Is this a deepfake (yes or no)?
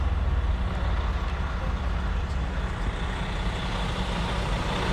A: no